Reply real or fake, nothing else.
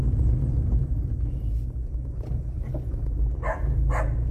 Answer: real